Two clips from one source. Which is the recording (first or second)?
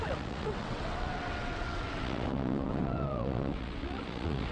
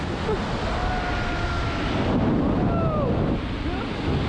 second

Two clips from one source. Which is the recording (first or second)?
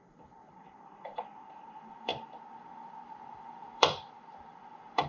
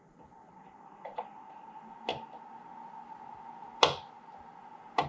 second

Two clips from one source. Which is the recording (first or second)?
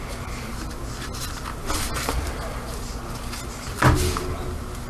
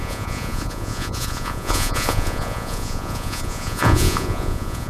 first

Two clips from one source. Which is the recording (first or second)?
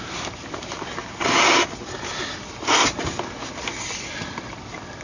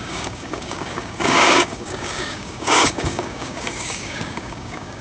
first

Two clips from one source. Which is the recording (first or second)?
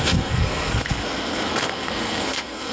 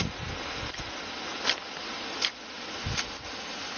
second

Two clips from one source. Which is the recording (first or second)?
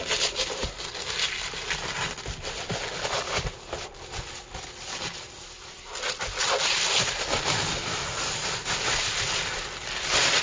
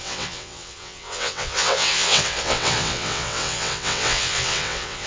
first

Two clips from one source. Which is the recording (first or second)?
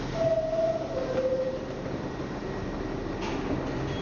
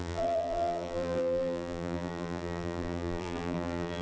first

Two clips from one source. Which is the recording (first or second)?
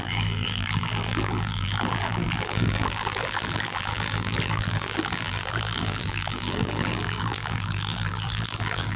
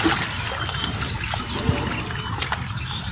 second